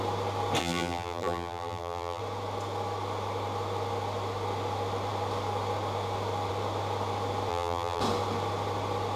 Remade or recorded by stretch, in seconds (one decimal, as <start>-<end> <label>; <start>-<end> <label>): 0.0-0.6 recorded; 0.6-2.2 remade; 2.2-7.5 recorded; 7.5-8.0 remade; 8.0-9.2 recorded